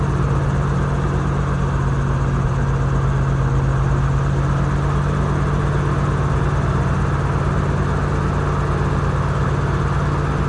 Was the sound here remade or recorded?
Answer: recorded